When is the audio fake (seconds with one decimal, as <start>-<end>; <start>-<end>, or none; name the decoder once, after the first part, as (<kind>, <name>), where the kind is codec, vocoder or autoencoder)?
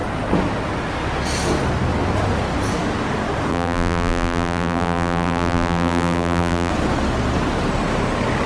3.5-6.7 (vocoder, BigVGAN v2)